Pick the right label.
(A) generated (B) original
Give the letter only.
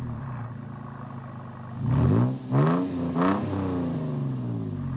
B